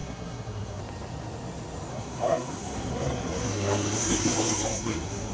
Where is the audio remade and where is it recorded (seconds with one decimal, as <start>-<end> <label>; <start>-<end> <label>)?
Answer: 0.0-0.8 remade; 0.8-1.9 recorded; 1.9-5.3 remade